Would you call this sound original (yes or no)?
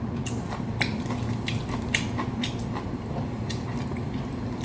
yes